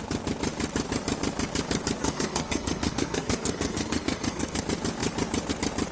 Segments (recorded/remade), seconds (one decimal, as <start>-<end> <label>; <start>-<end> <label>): 0.0-2.0 recorded; 2.0-4.6 remade; 4.6-5.9 recorded